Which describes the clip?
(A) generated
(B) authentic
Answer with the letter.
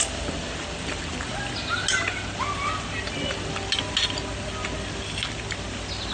B